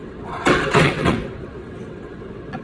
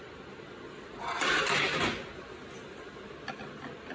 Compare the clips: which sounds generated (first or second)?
first